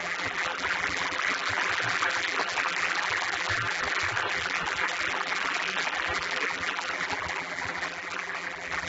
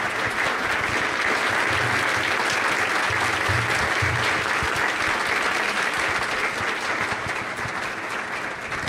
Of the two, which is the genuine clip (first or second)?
second